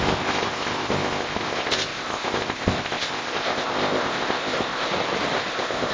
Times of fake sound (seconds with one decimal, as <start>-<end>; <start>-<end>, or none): 0.0-4.9; 5.5-5.9